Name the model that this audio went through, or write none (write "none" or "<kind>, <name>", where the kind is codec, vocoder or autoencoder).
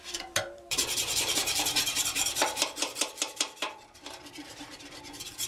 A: vocoder, BigVGAN v2